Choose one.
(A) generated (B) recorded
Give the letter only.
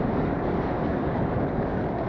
A